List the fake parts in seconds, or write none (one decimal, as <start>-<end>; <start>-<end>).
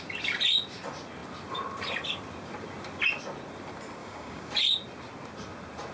4.0-4.5